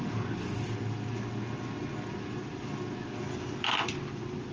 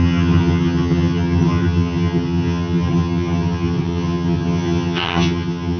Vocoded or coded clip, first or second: second